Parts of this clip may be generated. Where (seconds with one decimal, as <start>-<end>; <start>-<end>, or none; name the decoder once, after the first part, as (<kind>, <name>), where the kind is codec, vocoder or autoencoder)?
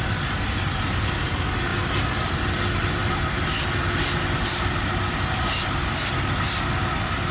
none